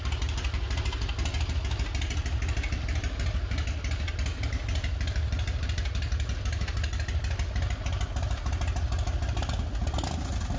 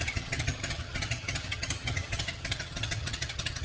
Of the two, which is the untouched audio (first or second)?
first